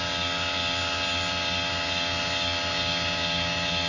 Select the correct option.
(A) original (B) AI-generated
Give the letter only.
A